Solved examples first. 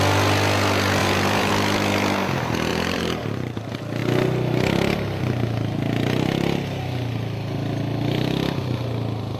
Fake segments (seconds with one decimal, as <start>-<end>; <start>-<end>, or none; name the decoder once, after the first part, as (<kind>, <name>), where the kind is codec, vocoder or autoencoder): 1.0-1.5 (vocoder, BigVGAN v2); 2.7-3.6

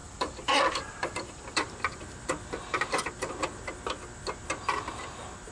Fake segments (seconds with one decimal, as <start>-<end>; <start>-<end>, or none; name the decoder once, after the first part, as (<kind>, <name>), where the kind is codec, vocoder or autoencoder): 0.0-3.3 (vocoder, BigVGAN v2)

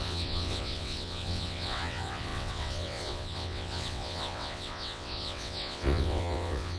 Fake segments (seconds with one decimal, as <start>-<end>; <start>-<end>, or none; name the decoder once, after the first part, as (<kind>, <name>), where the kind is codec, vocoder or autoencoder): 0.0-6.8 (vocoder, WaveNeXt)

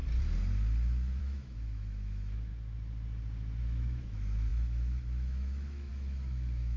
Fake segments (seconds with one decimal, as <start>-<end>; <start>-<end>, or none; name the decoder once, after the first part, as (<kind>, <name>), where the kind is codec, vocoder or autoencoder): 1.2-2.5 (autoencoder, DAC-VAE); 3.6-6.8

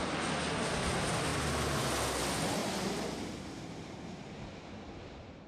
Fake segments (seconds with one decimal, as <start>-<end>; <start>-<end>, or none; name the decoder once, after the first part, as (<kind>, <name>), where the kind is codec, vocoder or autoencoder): 2.6-4.4 (vocoder, BigVGAN v2)